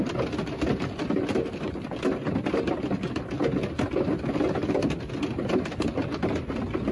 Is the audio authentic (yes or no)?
yes